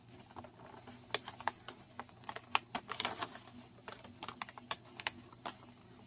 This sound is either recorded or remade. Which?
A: recorded